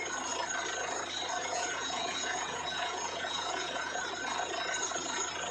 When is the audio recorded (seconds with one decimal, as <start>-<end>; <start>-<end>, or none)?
0.0-1.4; 4.0-5.5